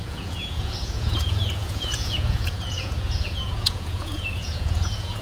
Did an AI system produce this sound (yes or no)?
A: yes